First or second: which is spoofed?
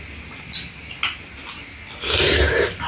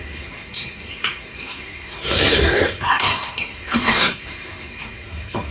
second